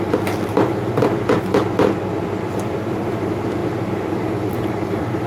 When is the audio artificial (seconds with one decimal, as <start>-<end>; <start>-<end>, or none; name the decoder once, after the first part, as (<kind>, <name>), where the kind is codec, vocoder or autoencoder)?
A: 0.0-1.6 (vocoder, BigVGAN v2); 2.2-5.3